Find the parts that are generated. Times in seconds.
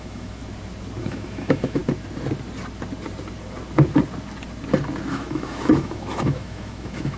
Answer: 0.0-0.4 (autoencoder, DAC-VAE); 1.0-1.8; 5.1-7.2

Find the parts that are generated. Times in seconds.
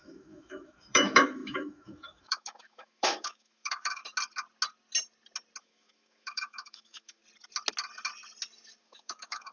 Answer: 0.0-4.0 (autoencoder, DAC-VAE); 5.6-7.2; 8.8-9.5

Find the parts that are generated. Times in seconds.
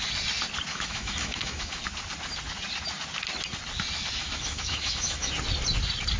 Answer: 0.7-1.8 (autoencoder, DAC-VAE); 4.2-5.3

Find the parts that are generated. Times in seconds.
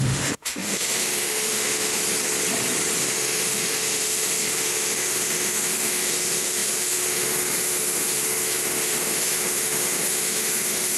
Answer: 0.0-2.0 (autoencoder, DAC-VAE); 3.0-11.0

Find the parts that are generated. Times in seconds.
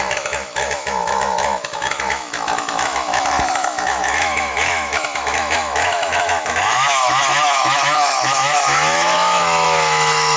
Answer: 0.0-10.4 (autoencoder, DAC-VAE)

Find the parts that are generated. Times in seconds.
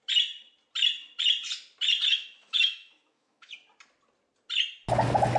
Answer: 2.1-3.5 (autoencoder, DAC-VAE)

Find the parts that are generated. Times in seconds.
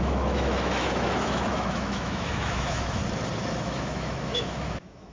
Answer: 0.0-3.0 (autoencoder, DAC-VAE); 3.6-5.1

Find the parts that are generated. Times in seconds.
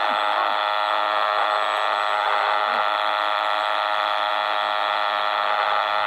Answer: 2.7-4.3 (autoencoder, DAC-VAE)